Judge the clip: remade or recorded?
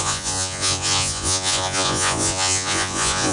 remade